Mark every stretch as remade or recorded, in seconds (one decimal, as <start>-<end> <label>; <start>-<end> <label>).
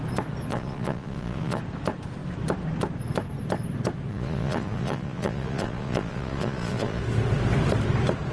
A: 0.0-0.5 recorded; 0.5-1.6 remade; 1.6-4.1 recorded; 4.1-7.0 remade; 7.0-8.3 recorded